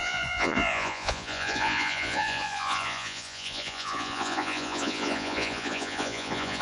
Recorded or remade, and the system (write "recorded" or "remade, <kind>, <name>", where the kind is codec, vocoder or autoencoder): remade, vocoder, Vocos